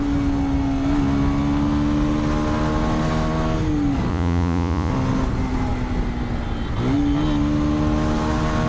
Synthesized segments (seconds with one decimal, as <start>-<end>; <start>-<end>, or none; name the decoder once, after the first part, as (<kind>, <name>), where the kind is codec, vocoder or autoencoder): 4.1-4.9 (vocoder, Vocos)